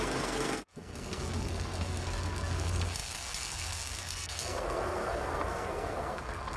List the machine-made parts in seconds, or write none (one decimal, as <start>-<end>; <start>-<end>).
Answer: 0.0-6.6